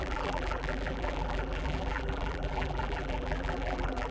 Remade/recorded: remade